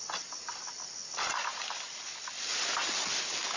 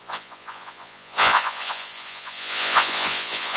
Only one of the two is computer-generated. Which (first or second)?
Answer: second